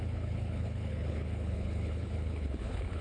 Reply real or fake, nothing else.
fake